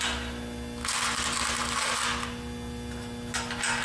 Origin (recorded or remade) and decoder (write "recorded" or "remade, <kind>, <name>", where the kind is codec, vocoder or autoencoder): recorded